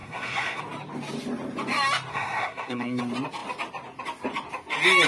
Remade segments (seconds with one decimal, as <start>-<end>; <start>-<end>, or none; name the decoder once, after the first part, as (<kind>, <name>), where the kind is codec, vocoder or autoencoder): 0.0-0.6 (codec, SNAC); 2.1-3.0